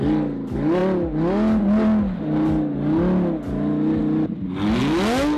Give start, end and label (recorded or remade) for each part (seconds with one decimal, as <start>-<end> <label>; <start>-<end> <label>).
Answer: 0.0-5.4 recorded